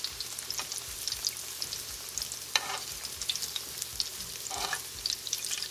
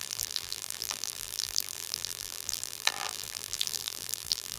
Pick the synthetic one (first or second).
second